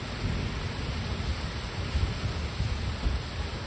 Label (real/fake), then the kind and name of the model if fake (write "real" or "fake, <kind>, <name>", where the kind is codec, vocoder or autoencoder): real